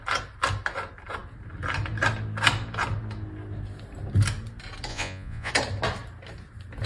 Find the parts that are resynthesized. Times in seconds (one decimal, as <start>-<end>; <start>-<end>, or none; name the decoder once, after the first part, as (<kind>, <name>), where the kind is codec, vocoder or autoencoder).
4.9-5.5 (vocoder, Vocos)